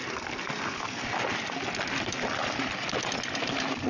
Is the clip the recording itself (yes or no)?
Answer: yes